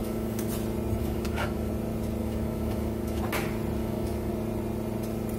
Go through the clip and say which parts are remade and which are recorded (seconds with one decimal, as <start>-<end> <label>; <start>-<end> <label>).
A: 0.0-0.5 remade; 0.5-1.0 recorded; 1.0-1.7 remade; 1.7-2.2 recorded; 2.2-3.2 remade; 3.2-3.8 recorded; 3.8-4.3 remade; 4.3-5.4 recorded